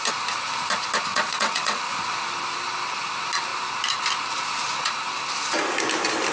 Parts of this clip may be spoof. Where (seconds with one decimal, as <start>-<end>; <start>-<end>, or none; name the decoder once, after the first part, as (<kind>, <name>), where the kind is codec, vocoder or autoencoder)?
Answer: 1.1-1.8 (vocoder, WaveNeXt)

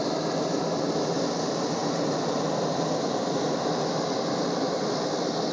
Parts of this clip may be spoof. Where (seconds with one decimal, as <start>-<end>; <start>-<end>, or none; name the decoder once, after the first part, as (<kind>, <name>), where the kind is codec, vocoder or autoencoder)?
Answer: none

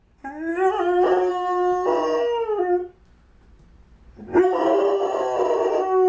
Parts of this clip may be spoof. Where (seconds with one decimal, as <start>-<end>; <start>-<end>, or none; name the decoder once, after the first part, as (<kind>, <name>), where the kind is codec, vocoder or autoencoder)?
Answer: none

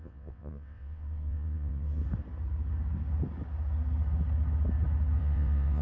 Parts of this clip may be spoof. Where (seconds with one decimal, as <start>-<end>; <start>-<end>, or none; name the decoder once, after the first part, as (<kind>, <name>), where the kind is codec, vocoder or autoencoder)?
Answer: 0.0-2.0 (vocoder, WaveNeXt); 5.2-5.8

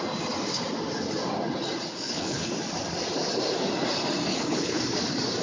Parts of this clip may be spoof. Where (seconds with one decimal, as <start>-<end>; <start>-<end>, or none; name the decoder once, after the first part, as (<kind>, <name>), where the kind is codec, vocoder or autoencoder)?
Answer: 1.9-2.5 (codec, HILCodec); 4.3-4.8

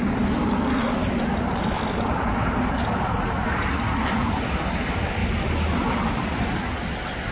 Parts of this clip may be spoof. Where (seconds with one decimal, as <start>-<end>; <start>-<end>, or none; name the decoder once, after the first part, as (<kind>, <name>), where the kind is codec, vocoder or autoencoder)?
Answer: none

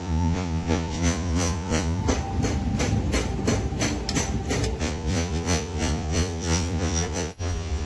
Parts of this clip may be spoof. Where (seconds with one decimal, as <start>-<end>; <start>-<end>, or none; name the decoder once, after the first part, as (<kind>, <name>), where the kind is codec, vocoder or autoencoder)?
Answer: 0.0-2.0 (vocoder, Vocos); 4.8-7.9

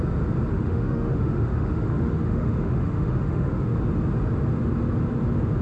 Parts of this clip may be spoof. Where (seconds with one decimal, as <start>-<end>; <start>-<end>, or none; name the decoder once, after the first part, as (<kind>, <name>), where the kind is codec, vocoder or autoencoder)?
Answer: 0.5-3.8 (autoencoder, DAC-VAE)